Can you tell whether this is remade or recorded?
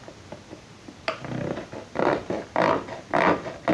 recorded